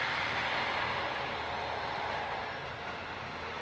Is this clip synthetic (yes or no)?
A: no